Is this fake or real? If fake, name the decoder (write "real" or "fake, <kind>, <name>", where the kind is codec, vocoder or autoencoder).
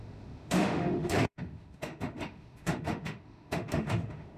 fake, autoencoder, DAC-VAE